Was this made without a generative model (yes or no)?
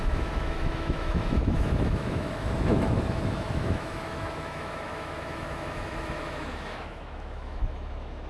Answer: no